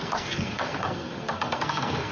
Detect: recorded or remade remade